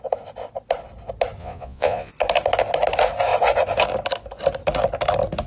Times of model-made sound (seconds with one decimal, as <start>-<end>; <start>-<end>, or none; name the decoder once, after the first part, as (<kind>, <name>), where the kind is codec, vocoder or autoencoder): 1.4-2.1 (vocoder, Vocos)

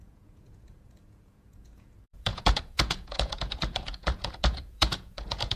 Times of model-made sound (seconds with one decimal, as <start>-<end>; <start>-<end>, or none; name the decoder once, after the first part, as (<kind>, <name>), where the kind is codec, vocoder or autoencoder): 0.0-5.6 (vocoder, Vocos)